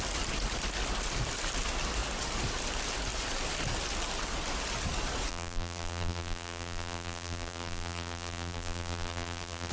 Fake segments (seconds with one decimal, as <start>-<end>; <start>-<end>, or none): 5.3-9.7